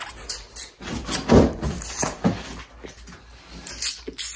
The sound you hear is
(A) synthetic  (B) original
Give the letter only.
B